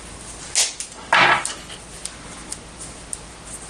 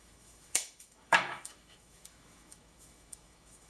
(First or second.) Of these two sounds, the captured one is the first